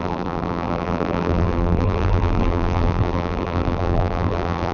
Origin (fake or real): fake